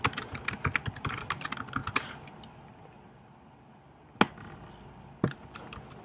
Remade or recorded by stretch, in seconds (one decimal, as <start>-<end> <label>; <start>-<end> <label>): 0.0-6.0 recorded